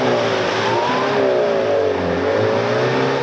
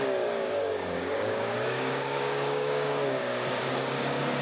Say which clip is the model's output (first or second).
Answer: second